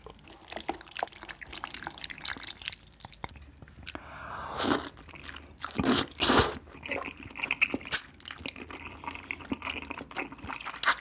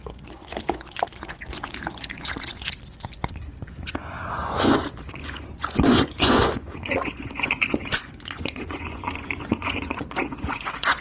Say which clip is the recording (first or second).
first